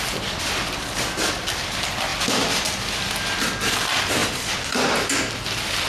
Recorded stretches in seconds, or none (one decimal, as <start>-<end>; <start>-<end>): 0.0-2.1; 2.6-4.2; 5.1-5.9